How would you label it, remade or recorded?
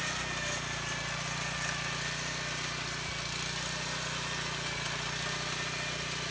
recorded